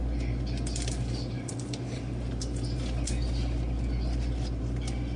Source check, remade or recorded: recorded